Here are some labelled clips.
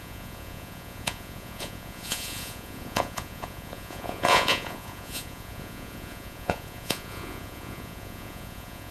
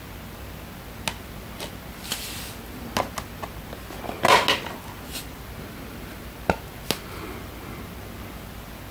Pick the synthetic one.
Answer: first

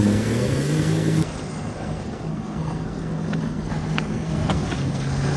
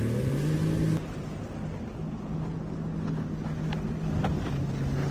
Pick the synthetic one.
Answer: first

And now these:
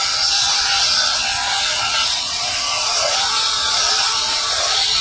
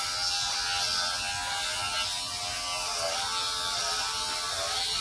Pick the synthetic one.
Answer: first